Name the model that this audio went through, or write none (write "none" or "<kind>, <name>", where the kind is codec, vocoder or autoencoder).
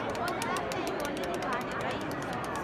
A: none